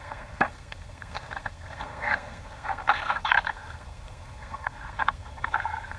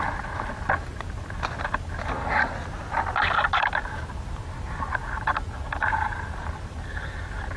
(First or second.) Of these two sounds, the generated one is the first